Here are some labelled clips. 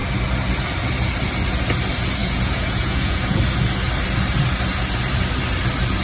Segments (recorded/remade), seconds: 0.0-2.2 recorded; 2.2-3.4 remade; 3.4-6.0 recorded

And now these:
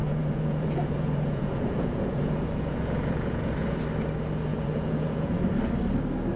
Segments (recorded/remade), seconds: 0.0-3.8 remade; 3.8-4.5 recorded; 4.5-5.4 remade; 5.4-6.4 recorded

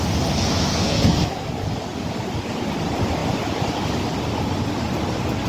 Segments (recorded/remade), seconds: 0.0-0.7 recorded; 0.7-1.5 remade; 1.5-5.5 recorded

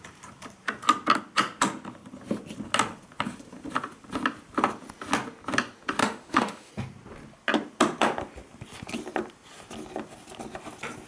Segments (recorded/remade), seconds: 0.0-6.0 recorded; 6.0-6.7 remade; 6.7-11.1 recorded

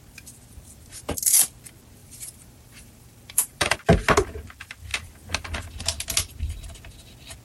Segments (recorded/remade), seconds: 0.0-2.0 recorded; 2.0-3.8 remade; 3.8-7.4 recorded

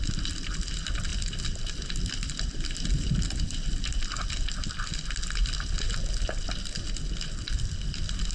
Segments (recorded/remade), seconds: 0.0-8.3 recorded

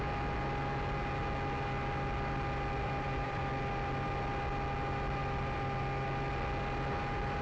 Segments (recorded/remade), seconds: 0.0-2.8 recorded; 2.8-3.5 remade; 3.5-5.2 recorded; 5.2-5.8 remade; 5.8-7.4 recorded

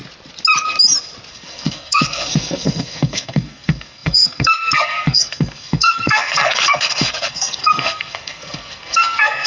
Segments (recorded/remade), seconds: 0.0-1.3 recorded; 1.3-9.5 remade